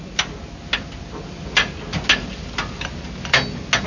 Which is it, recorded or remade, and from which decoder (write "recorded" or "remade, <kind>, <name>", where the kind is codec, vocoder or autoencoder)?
recorded